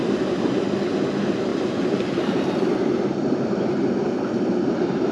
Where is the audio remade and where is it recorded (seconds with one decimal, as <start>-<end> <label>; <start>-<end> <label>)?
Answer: 0.0-1.5 recorded; 1.5-2.7 remade; 2.7-5.1 recorded